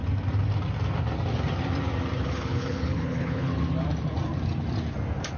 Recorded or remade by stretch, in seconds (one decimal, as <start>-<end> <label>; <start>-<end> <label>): 0.0-2.2 recorded; 2.2-3.5 remade; 3.5-5.4 recorded